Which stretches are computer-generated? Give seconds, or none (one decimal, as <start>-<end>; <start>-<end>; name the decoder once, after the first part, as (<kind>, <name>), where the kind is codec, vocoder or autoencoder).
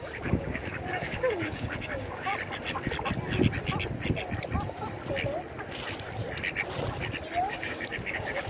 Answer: 0.0-2.3 (codec, DAC); 7.4-8.5